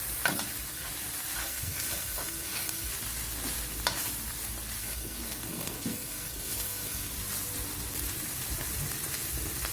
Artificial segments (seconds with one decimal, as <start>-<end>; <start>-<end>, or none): 1.4-2.9; 4.8-7.1